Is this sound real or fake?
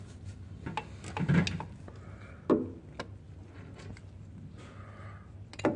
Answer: real